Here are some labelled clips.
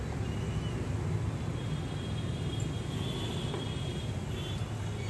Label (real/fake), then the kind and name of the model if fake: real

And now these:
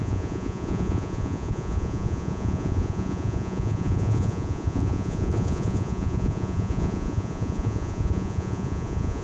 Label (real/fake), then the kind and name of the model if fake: fake, vocoder, Vocos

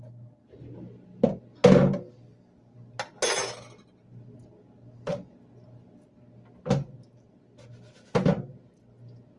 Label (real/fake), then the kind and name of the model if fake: real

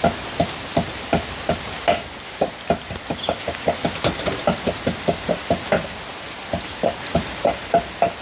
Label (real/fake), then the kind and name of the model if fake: real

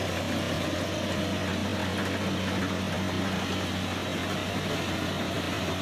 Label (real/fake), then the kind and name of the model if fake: real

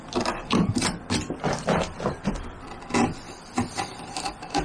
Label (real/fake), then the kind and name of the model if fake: real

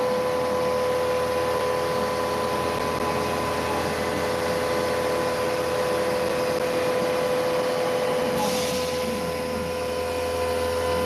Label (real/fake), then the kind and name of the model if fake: real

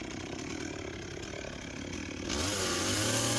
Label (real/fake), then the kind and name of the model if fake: real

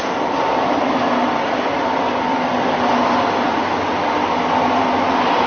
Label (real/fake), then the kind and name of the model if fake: real